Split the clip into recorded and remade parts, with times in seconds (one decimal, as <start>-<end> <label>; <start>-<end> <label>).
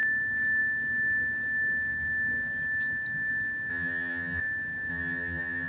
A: 0.0-3.7 recorded; 3.7-4.4 remade; 4.4-4.9 recorded; 4.9-5.7 remade